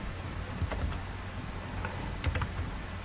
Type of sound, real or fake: real